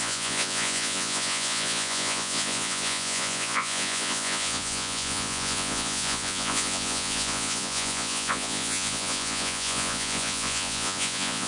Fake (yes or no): yes